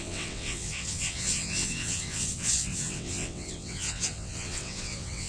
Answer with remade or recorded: remade